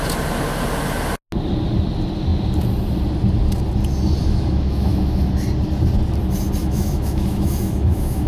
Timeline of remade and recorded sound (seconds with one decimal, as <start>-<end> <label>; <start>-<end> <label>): 0.0-4.2 recorded; 4.2-5.3 remade; 5.3-6.6 recorded; 6.6-8.3 remade